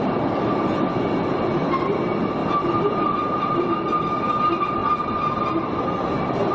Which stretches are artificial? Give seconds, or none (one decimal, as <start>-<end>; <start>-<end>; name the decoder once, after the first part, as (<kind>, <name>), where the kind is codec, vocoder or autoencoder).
none